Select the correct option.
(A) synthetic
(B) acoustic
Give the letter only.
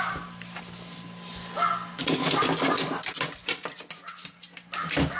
B